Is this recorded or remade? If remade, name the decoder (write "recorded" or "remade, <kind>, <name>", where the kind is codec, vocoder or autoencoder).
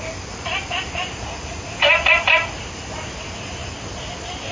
recorded